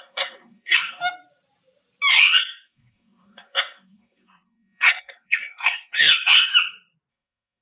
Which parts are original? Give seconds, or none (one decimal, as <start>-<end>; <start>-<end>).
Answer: 1.0-2.1; 6.5-7.1